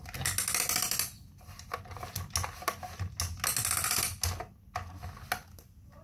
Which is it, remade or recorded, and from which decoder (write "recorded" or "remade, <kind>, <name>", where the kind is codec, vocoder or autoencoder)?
recorded